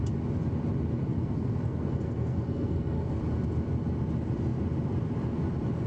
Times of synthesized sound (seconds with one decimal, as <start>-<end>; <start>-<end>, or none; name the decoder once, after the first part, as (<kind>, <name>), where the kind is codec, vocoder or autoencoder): 1.1-3.2 (codec, SNAC)